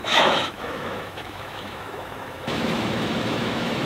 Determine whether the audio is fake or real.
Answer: fake